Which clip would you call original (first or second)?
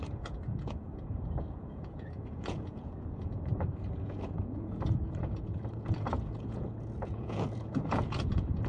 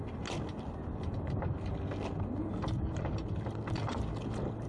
second